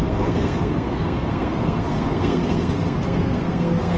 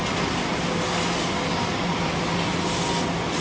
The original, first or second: second